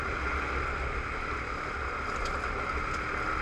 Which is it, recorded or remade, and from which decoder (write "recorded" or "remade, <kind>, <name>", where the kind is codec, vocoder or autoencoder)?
recorded